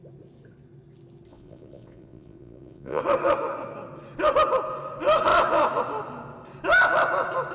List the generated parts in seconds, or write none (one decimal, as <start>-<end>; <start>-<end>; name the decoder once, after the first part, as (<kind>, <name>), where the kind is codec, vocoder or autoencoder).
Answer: 1.3-3.0 (vocoder, Vocos)